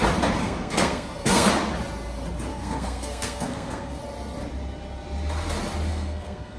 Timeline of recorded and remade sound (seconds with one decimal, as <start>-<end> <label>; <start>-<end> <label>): 0.0-0.4 recorded; 0.4-1.5 remade; 1.5-2.5 recorded; 2.5-4.0 remade; 4.0-5.9 recorded; 5.9-6.6 remade